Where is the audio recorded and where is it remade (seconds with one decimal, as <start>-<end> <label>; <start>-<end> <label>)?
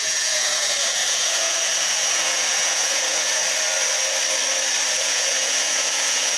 0.0-3.4 remade; 3.4-4.9 recorded; 4.9-6.4 remade